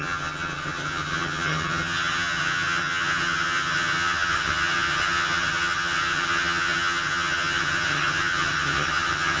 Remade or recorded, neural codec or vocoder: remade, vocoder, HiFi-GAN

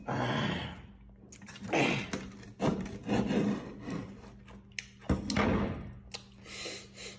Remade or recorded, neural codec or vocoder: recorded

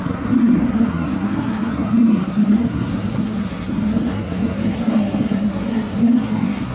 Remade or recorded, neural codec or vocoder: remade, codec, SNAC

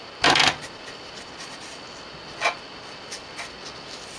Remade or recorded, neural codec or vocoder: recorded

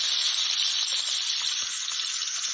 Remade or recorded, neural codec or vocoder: recorded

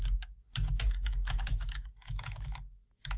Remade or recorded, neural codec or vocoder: remade, autoencoder, DAC-VAE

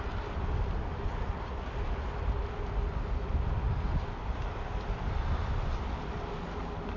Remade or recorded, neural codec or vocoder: recorded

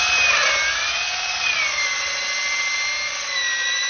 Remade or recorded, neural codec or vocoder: recorded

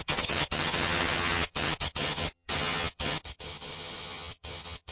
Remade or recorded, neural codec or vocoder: remade, vocoder, HiFi-GAN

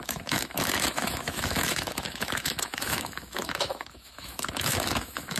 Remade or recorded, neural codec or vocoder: remade, autoencoder, DAC-VAE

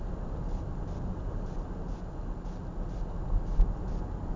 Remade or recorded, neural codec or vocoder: recorded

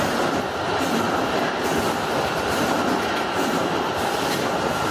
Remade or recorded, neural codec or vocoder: recorded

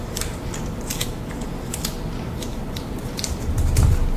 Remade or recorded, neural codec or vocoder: recorded